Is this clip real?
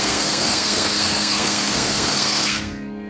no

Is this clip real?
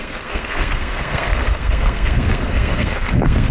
no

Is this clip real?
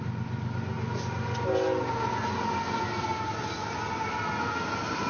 yes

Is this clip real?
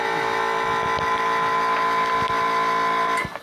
yes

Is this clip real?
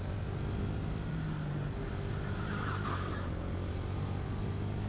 yes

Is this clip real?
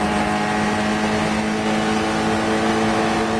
yes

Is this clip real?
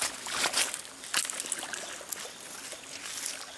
yes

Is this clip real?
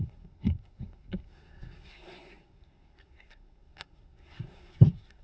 no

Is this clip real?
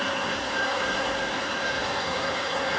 no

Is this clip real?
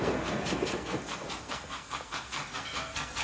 no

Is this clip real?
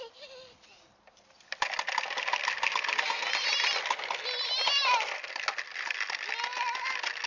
yes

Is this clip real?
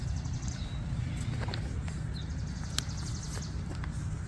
yes